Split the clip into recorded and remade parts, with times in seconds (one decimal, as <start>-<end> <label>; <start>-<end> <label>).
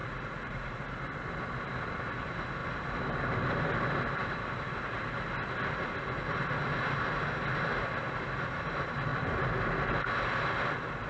0.0-0.8 remade; 0.8-11.1 recorded